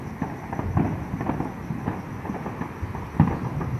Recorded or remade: recorded